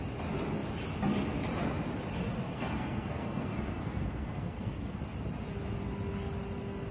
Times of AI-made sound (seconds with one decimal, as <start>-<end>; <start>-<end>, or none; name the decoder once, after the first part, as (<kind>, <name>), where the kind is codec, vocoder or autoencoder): 2.5-5.0 (codec, SNAC)